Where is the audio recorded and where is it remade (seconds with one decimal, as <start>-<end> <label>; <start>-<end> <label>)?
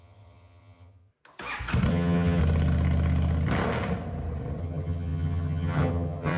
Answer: 0.0-1.1 remade; 1.1-1.9 recorded; 1.9-2.4 remade; 2.4-4.6 recorded; 4.6-6.4 remade